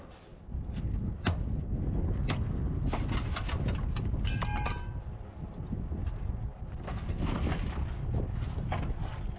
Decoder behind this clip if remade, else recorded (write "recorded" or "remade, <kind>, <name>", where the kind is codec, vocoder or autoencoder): recorded